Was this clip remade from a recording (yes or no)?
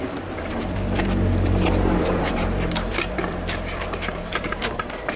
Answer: yes